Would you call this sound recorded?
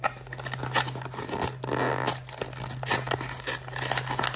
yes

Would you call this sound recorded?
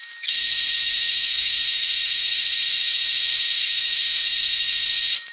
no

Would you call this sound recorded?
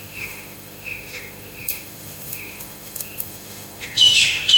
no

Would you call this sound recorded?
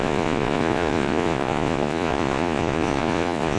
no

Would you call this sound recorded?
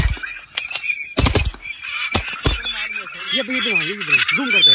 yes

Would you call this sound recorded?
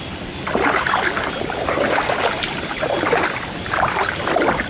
yes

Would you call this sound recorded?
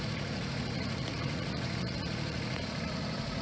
no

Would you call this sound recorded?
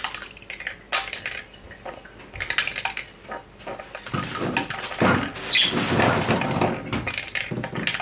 yes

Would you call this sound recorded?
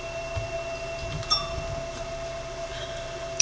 yes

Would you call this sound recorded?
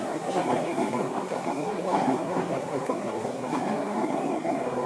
no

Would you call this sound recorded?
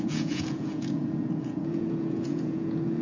no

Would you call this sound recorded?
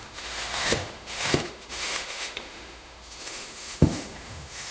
no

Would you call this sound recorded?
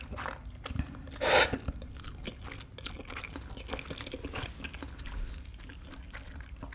yes